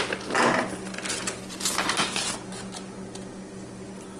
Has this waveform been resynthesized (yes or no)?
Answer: no